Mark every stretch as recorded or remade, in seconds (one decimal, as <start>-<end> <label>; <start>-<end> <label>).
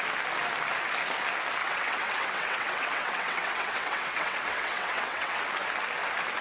0.0-1.6 recorded; 1.6-5.4 remade; 5.4-6.4 recorded